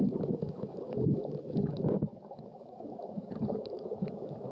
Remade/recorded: remade